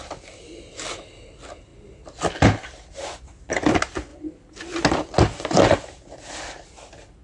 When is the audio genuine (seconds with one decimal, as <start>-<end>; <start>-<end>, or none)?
0.0-7.2